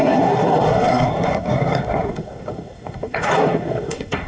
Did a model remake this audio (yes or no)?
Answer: yes